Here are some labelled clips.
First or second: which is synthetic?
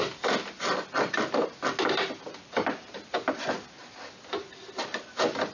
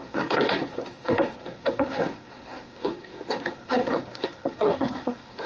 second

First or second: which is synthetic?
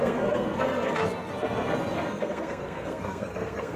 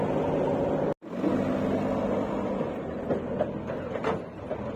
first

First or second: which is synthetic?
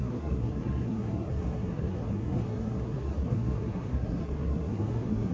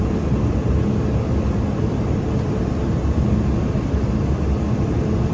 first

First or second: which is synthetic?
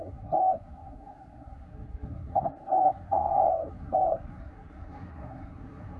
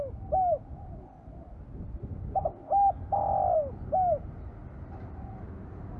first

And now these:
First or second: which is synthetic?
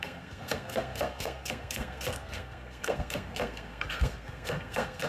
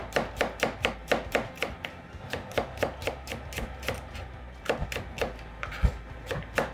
first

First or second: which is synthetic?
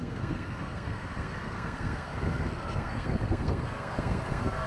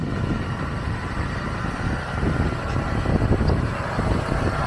first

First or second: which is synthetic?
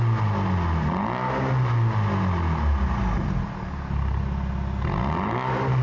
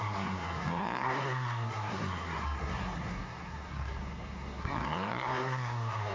second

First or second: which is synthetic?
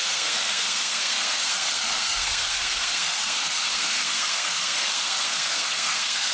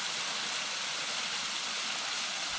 first